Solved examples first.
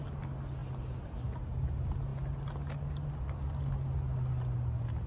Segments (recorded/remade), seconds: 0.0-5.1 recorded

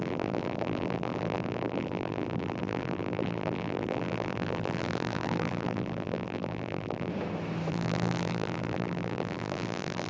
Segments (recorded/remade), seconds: 0.0-7.1 remade; 7.1-7.7 recorded; 7.7-10.1 remade

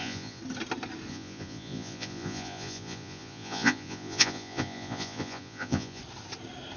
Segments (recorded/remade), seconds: 0.0-0.4 remade; 0.4-1.1 recorded; 1.1-6.0 remade; 6.0-6.8 recorded

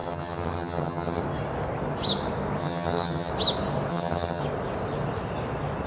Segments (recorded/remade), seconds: 0.0-1.2 remade; 1.2-2.6 recorded; 2.6-3.3 remade; 3.3-3.9 recorded; 3.9-4.4 remade; 4.4-5.9 recorded

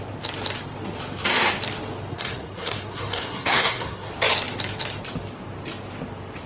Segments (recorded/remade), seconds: 0.0-2.1 recorded; 2.1-4.1 remade; 4.1-6.5 recorded

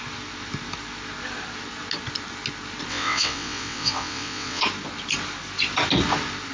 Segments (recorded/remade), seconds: 0.0-2.9 recorded; 2.9-4.6 remade; 4.6-6.5 recorded

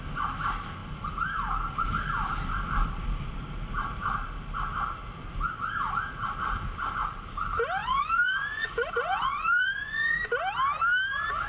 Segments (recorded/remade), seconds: 0.0-7.8 recorded; 7.8-10.3 remade; 10.3-11.5 recorded

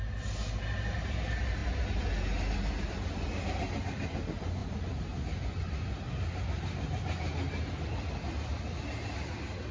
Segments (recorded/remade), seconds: 0.0-9.7 recorded